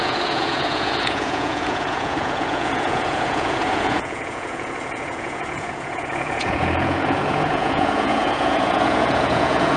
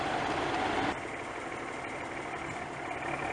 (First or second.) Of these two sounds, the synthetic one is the first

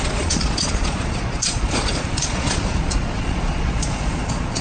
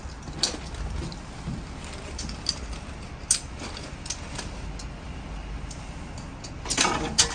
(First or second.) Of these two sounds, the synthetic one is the first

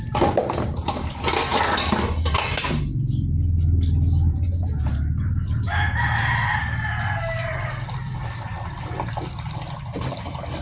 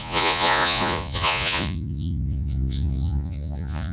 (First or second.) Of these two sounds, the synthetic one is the second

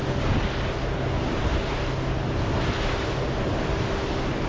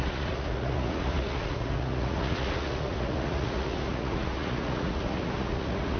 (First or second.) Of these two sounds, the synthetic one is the second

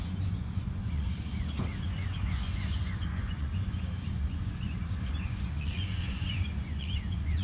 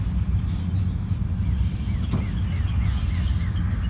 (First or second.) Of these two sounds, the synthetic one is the first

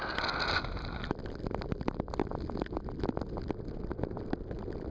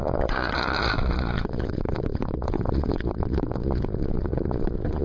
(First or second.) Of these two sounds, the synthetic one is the second